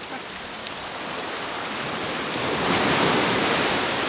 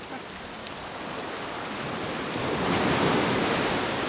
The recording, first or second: second